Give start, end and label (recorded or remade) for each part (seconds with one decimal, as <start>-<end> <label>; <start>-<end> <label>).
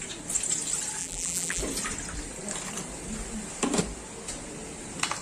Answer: 0.0-1.0 recorded; 1.0-1.6 remade; 1.6-5.2 recorded